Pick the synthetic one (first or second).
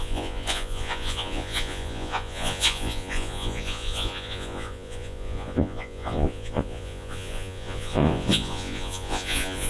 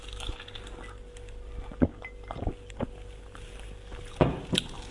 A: first